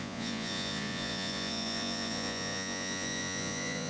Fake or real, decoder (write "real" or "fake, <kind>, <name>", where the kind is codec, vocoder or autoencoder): fake, vocoder, Vocos